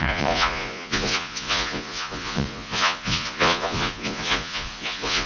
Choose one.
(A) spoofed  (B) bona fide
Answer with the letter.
A